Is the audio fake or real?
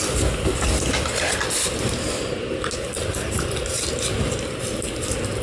real